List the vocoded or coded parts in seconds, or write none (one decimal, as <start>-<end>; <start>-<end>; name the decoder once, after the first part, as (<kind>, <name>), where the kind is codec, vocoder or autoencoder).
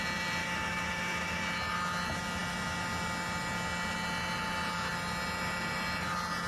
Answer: 0.4-1.4 (autoencoder, DAC-VAE)